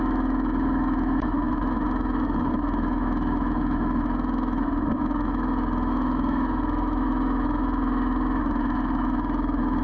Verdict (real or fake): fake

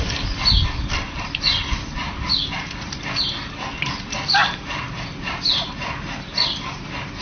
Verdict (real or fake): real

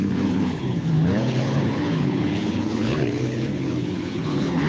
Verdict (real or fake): fake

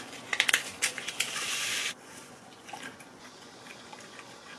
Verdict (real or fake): fake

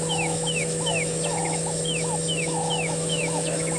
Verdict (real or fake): fake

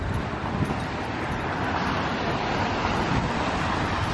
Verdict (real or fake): real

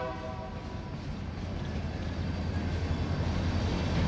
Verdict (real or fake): real